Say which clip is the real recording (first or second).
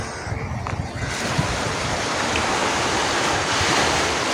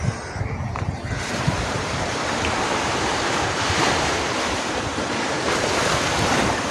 first